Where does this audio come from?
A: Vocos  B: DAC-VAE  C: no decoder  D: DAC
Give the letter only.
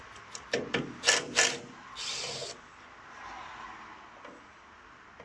C